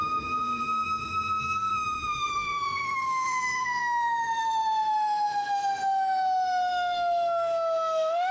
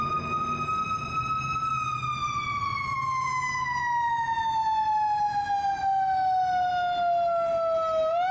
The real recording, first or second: second